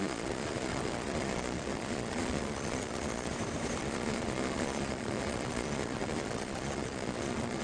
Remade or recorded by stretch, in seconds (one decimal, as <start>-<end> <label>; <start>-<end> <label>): 0.0-3.3 remade; 3.3-3.8 recorded; 3.8-7.6 remade